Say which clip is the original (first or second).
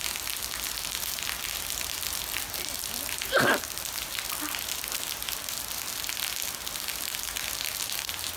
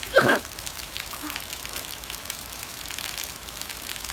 first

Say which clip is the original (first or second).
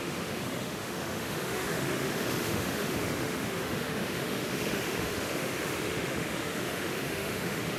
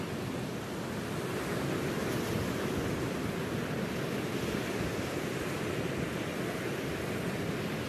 second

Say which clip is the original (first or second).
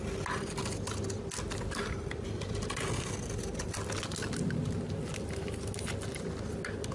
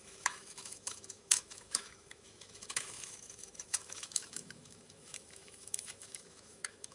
first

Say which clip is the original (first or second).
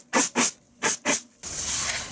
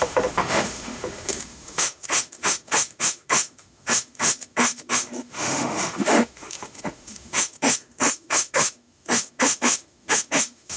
first